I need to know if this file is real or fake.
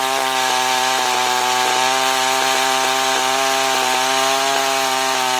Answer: fake